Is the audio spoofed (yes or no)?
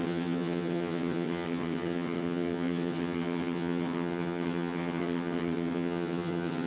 yes